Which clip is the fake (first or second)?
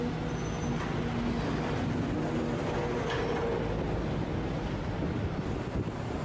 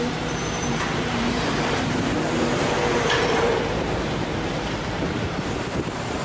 second